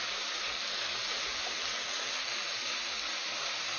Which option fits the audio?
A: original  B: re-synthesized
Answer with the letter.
A